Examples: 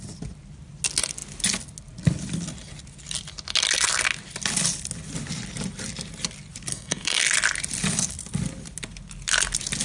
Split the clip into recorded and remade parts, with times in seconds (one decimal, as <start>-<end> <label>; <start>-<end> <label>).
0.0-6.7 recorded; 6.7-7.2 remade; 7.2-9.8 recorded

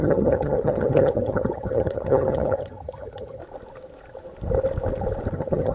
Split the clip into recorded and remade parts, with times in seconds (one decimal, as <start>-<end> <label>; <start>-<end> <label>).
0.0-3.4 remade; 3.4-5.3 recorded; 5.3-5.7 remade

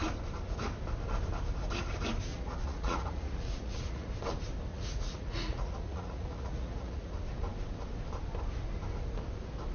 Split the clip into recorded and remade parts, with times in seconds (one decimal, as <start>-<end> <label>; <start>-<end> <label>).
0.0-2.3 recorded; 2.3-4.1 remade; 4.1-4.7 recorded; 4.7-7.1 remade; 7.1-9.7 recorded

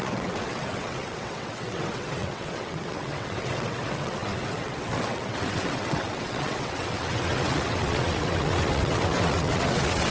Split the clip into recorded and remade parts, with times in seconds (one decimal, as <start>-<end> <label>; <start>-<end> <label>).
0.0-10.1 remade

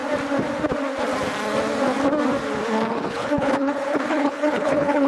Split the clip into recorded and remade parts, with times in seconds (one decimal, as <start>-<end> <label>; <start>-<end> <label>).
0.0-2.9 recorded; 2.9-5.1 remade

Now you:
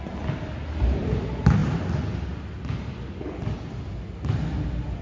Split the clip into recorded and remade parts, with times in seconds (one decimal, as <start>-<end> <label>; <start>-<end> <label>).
0.0-5.0 recorded

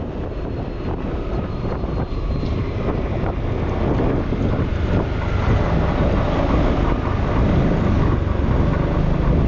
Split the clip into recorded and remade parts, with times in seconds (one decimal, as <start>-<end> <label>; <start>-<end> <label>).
0.0-1.3 recorded; 1.3-3.4 remade; 3.4-9.5 recorded

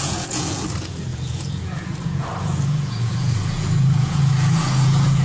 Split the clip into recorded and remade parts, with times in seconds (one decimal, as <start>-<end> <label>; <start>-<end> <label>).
0.0-5.2 remade